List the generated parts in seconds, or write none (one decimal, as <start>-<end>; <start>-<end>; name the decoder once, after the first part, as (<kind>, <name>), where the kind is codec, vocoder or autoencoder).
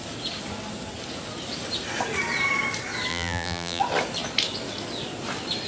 3.1-3.8 (vocoder, BigVGAN v2)